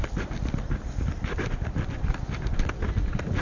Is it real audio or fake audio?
real